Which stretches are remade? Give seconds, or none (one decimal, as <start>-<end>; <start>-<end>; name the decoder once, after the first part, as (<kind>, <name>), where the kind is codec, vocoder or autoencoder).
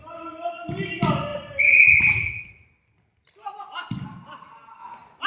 none